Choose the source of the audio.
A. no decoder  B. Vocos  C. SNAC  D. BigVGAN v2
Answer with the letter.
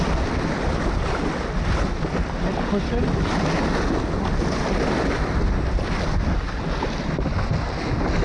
A